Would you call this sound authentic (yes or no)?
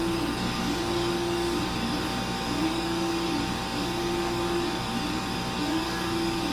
no